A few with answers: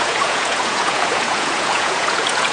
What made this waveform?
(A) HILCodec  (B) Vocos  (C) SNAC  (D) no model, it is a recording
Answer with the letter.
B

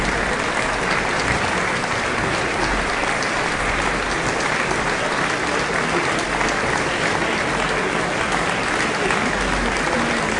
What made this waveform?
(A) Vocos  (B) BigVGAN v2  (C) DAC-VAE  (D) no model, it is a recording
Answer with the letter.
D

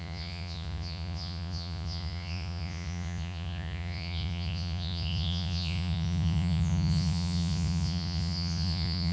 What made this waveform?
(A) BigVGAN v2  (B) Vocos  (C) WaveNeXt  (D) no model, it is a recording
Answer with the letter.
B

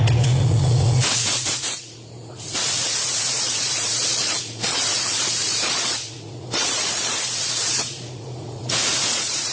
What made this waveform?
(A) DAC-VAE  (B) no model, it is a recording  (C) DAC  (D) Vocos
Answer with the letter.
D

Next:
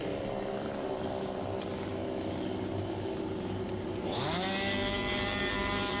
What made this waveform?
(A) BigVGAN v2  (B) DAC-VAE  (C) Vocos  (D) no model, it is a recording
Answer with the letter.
D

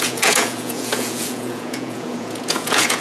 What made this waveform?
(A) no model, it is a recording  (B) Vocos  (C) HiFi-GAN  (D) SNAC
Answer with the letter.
B